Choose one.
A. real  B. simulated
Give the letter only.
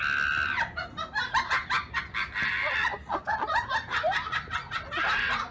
A